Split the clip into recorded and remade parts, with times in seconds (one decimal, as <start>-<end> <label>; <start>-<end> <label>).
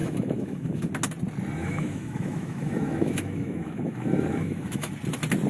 0.0-0.9 remade; 0.9-1.6 recorded; 1.6-4.9 remade; 4.9-5.5 recorded